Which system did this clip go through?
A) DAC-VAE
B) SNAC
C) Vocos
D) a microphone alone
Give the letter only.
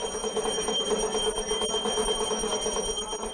D